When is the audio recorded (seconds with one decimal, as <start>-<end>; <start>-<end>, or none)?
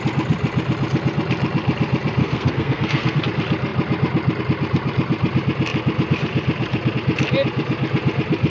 0.0-2.2; 3.2-8.5